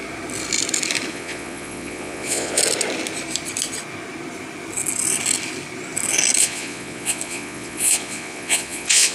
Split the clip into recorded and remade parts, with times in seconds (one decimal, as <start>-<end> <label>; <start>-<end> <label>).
0.0-1.1 recorded; 1.1-2.6 remade; 2.6-6.4 recorded; 6.4-9.1 remade